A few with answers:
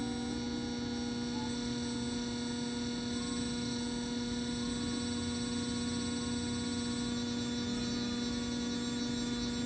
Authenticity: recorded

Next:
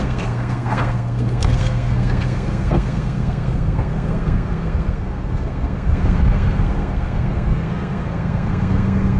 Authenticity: remade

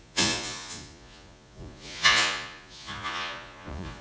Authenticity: remade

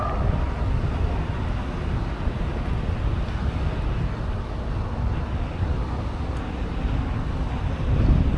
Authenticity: recorded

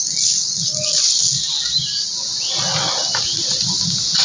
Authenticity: recorded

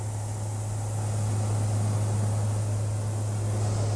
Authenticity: recorded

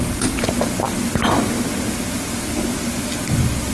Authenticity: recorded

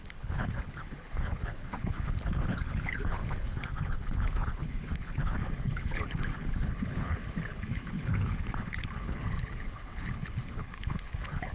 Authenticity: remade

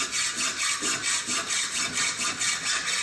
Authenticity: recorded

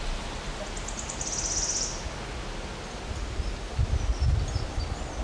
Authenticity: recorded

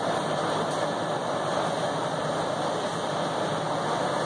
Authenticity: recorded